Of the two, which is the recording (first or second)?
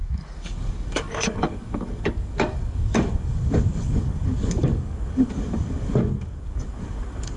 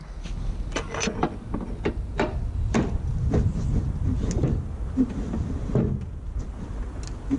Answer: second